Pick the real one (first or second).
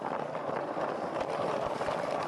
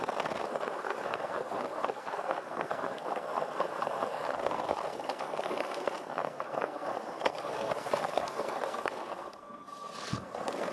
first